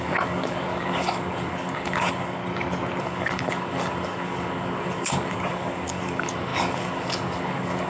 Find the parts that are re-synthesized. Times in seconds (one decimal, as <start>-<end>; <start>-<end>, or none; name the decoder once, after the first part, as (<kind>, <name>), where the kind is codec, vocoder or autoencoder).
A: 0.0-2.4 (codec, DAC); 3.0-7.9